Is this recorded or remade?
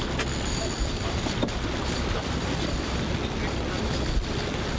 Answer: recorded